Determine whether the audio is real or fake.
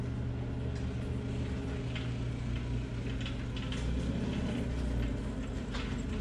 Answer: real